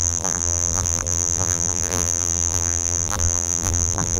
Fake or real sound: fake